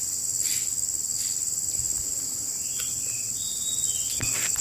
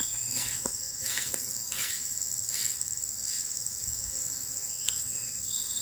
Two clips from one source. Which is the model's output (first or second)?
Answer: second